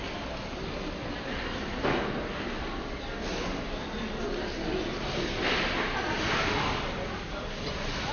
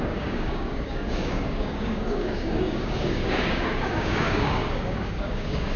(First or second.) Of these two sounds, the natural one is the first